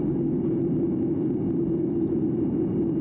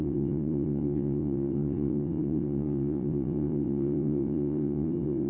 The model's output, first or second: second